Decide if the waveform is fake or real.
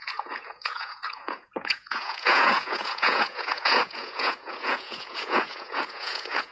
fake